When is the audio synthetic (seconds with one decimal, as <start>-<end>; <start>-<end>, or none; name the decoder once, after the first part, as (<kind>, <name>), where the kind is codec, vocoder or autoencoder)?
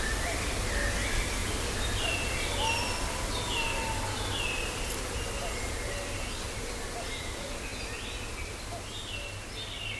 1.4-2.8 (vocoder, BigVGAN v2)